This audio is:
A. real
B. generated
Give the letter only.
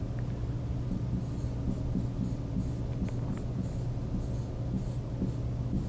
A